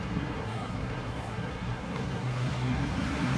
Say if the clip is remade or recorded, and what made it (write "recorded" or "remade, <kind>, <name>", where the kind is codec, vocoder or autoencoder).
remade, codec, SNAC